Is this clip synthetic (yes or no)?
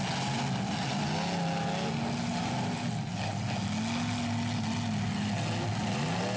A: no